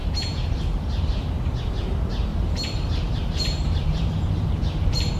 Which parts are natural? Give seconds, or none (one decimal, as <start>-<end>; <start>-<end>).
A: 1.7-2.3